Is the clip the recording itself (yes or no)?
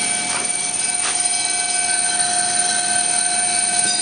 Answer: yes